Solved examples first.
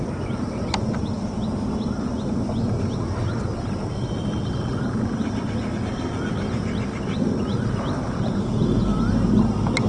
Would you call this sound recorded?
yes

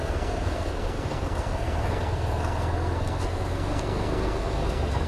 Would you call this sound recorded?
no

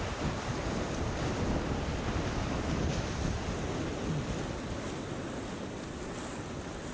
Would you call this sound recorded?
yes